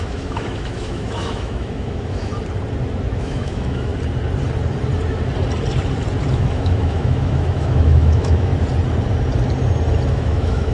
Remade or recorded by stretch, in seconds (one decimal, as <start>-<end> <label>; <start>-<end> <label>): 0.0-2.3 remade; 2.3-3.2 recorded; 3.2-3.9 remade; 3.9-6.3 recorded; 6.3-8.5 remade; 8.5-10.1 recorded; 10.1-10.7 remade